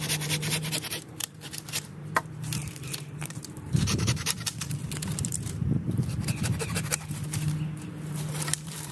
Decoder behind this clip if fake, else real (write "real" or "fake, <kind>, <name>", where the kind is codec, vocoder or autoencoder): fake, vocoder, BigVGAN v2